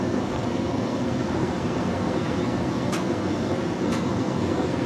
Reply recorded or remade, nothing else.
remade